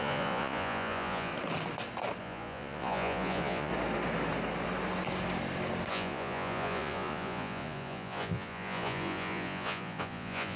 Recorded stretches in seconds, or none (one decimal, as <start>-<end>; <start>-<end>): 1.3-2.2; 3.7-5.9